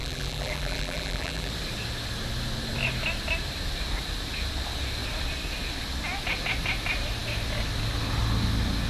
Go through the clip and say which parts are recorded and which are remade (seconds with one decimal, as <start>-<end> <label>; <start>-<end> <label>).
0.0-1.5 remade; 1.5-8.9 recorded